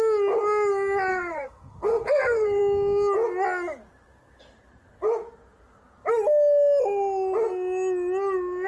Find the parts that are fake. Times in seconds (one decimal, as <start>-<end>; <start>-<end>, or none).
1.1-2.6